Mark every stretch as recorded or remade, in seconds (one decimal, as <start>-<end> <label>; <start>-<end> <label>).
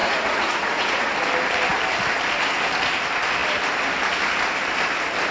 0.0-1.1 remade; 1.1-5.3 recorded